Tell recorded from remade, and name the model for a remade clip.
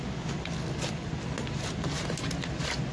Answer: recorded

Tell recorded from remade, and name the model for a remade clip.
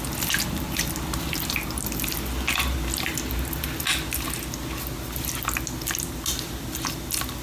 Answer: recorded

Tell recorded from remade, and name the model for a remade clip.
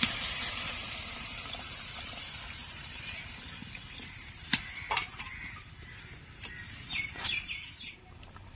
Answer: remade, vocoder, BigVGAN v2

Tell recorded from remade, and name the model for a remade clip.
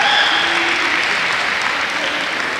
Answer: recorded